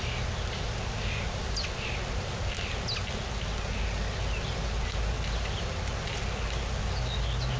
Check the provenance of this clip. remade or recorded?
recorded